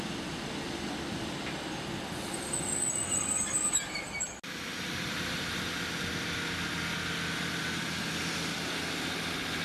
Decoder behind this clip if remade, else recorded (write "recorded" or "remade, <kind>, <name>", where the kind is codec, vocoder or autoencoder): recorded